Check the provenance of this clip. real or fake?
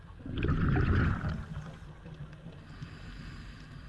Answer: real